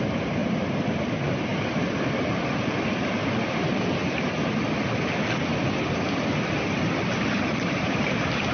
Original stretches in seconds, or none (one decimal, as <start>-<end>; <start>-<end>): 0.4-1.1; 1.5-2.2; 3.2-7.2